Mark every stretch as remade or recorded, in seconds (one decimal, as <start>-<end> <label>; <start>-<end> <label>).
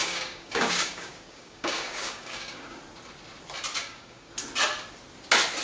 0.0-2.8 remade; 2.8-3.8 recorded; 3.8-4.3 remade; 4.3-5.6 recorded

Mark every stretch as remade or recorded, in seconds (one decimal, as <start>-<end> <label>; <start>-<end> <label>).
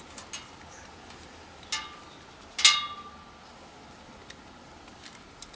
0.0-5.6 recorded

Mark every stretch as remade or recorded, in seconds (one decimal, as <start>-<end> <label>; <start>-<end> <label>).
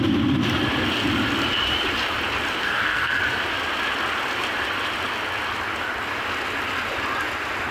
0.0-2.5 recorded; 2.5-3.2 remade; 3.2-7.7 recorded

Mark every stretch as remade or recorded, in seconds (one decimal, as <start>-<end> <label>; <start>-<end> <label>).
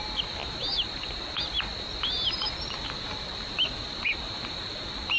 0.0-5.2 recorded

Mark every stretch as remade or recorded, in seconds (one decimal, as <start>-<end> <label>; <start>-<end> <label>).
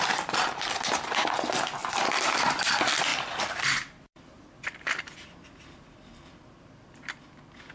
0.0-1.8 recorded; 1.8-2.6 remade; 2.6-3.1 recorded; 3.1-7.1 remade; 7.1-7.7 recorded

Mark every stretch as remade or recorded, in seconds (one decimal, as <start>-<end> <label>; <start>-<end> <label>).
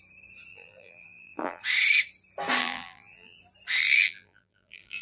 0.0-0.5 recorded; 0.5-1.6 remade; 1.6-2.6 recorded; 2.6-3.4 remade; 3.4-3.8 recorded; 3.8-5.0 remade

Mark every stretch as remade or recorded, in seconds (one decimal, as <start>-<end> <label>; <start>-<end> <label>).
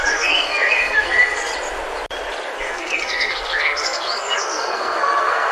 0.0-1.5 remade; 1.5-2.6 recorded; 2.6-5.5 remade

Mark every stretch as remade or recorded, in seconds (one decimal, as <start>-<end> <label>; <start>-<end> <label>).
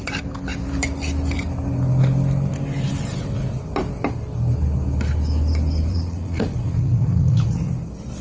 0.0-5.9 recorded; 5.9-7.7 remade; 7.7-8.2 recorded